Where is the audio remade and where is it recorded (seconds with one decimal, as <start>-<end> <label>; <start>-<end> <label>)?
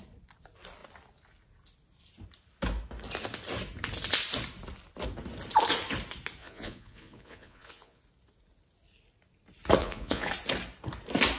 0.0-6.4 recorded; 6.4-8.0 remade; 8.0-9.8 recorded; 9.8-10.3 remade; 10.3-11.4 recorded